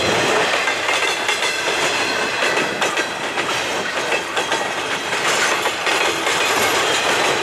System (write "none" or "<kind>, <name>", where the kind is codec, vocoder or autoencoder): none